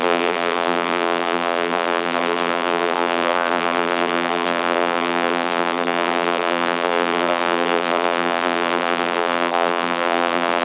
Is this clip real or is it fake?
fake